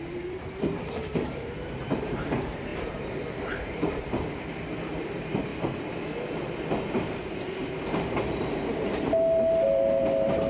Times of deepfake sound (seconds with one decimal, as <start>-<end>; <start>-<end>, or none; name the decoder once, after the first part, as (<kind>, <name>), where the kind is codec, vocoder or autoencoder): 0.0-5.5 (vocoder, BigVGAN v2); 7.3-10.5